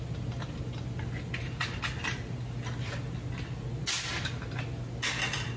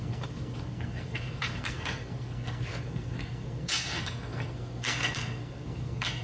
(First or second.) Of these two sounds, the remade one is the second